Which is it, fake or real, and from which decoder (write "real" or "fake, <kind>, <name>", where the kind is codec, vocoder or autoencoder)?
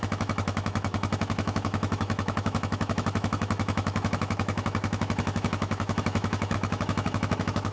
fake, autoencoder, DAC-VAE